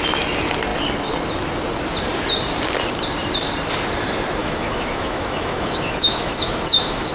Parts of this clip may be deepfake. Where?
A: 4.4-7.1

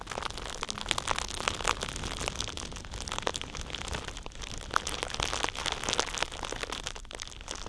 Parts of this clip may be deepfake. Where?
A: none

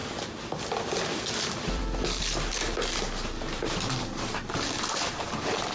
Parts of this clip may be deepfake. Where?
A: 0.5-2.2; 3.6-5.7

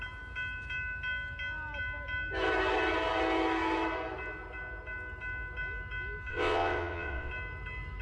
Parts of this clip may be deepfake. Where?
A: 6.3-7.3

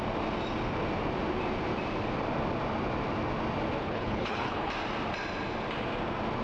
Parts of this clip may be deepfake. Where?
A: 3.8-4.7

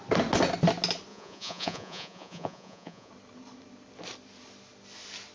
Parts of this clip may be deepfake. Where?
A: 1.1-3.1